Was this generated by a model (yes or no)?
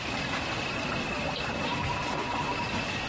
no